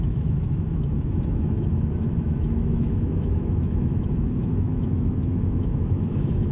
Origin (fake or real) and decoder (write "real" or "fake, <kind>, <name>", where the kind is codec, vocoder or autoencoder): fake, autoencoder, DAC-VAE